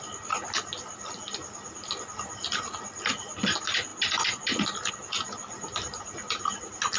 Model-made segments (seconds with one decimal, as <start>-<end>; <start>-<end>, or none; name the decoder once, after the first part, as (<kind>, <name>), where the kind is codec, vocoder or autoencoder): none